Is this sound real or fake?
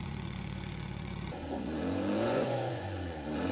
fake